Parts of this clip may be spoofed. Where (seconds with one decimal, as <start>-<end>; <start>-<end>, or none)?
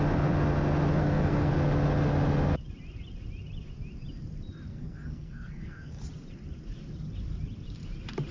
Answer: 1.0-1.5; 4.7-6.0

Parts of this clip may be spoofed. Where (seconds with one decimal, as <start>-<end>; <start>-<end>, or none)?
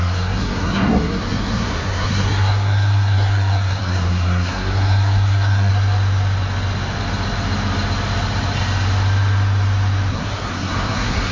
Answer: 0.0-5.7; 10.1-11.3